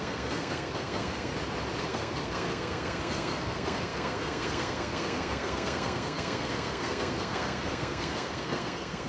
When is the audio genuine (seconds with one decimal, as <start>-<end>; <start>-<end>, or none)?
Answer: 1.3-1.8

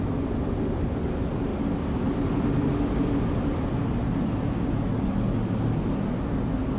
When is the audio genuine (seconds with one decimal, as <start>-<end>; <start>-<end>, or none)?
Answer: 0.0-6.8

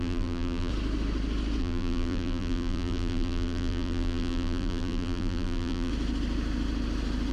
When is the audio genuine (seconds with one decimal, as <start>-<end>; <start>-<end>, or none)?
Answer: 0.7-1.6; 5.9-7.3

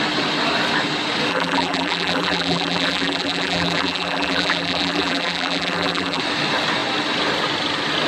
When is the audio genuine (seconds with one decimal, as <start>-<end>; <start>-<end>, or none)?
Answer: 0.0-1.3; 6.2-8.1

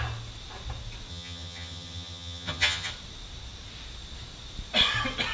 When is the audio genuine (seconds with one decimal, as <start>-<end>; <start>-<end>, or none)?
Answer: 0.0-1.1; 2.9-5.3